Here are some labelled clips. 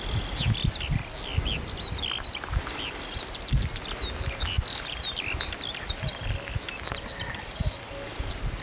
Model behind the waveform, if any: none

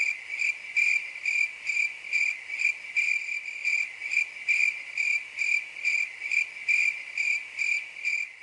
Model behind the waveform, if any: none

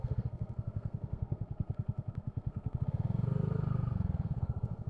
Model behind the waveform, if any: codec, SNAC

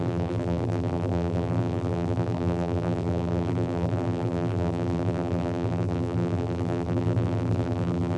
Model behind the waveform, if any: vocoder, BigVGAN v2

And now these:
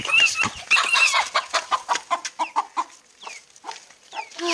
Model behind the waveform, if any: none